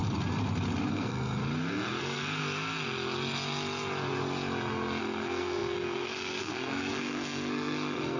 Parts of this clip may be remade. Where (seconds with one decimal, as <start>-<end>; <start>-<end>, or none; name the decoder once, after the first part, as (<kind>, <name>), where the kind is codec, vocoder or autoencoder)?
0.9-1.4 (codec, SNAC); 2.0-2.4; 5.0-8.2